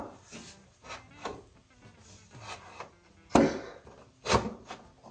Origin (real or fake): real